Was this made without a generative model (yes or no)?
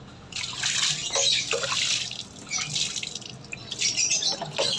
yes